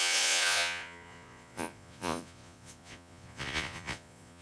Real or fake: fake